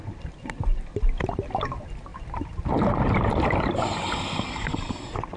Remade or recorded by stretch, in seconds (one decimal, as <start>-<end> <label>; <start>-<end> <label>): 0.0-5.4 recorded